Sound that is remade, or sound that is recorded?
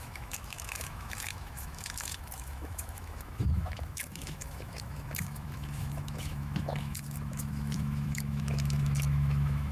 remade